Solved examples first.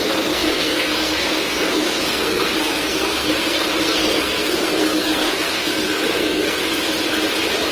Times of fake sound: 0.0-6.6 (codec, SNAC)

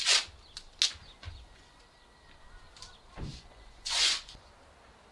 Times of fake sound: 1.0-1.8 (vocoder, Vocos); 3.3-4.5

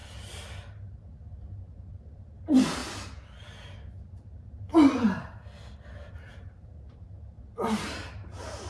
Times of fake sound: 1.7-2.8 (vocoder, BigVGAN v2); 6.1-8.7

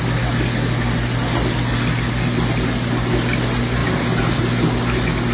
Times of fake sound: 3.8-4.4 (vocoder, BigVGAN v2)

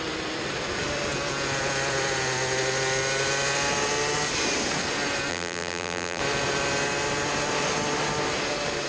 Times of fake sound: 5.3-6.2 (vocoder, BigVGAN v2)

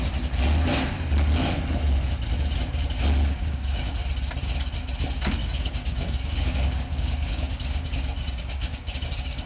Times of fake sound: 3.4-3.9 (codec, DAC); 5.4-9.5

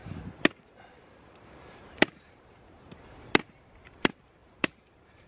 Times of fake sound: 0.0-5.3 (vocoder, BigVGAN v2)